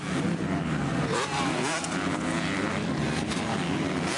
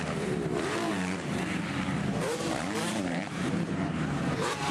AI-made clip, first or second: second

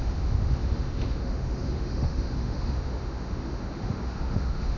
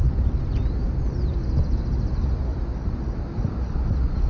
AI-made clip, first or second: first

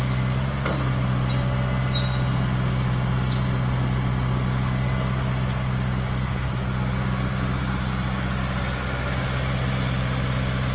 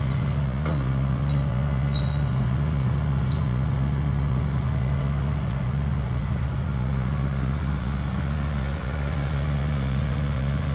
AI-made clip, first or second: second